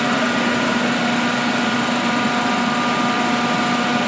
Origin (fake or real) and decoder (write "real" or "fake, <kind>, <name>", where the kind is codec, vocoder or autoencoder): real